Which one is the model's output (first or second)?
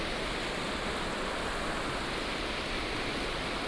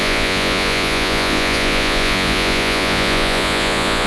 second